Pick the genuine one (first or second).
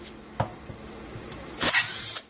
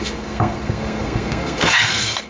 first